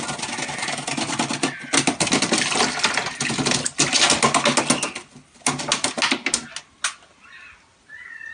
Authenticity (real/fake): real